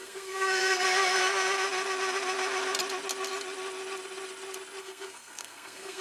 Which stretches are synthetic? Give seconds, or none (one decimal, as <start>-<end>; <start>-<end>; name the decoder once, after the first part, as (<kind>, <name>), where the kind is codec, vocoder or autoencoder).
0.0-1.2 (codec, SNAC); 4.8-6.0